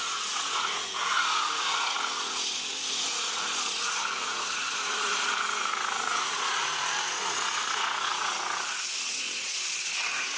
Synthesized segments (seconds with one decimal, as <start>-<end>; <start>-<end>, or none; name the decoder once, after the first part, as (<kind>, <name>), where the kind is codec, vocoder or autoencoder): 0.0-10.4 (vocoder, Vocos)